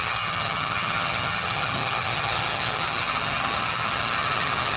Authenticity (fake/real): fake